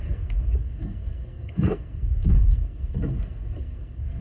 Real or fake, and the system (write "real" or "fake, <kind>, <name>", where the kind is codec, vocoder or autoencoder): fake, codec, SNAC